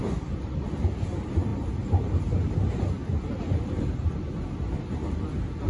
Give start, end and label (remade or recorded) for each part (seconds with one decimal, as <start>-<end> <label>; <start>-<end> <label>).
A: 0.0-5.7 recorded